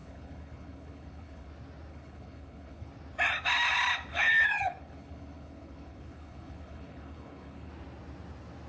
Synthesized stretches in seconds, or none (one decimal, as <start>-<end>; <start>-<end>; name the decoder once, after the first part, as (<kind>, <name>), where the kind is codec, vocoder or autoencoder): 0.0-1.5 (codec, HILCodec); 1.9-2.9; 4.1-7.7